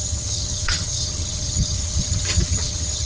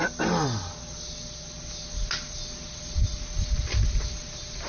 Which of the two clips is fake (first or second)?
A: first